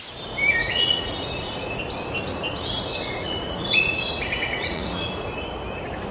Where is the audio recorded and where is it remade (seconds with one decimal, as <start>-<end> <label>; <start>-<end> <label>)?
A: 0.0-0.6 recorded; 0.6-1.8 remade; 1.8-2.3 recorded; 2.3-5.4 remade; 5.4-6.1 recorded